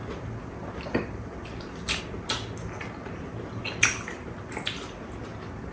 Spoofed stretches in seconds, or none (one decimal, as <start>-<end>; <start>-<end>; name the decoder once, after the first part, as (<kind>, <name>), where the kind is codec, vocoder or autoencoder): 0.0-2.0 (vocoder, BigVGAN v2); 4.2-5.2